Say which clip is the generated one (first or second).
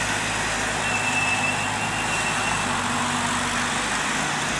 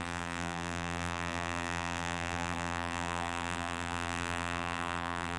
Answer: second